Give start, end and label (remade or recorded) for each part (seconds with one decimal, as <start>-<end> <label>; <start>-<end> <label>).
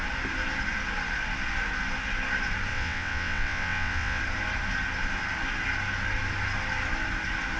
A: 0.0-2.7 recorded; 2.7-4.2 remade; 4.2-7.6 recorded